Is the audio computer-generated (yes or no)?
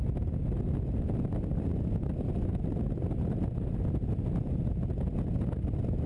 no